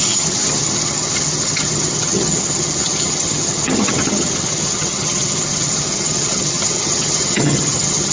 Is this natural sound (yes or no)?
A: no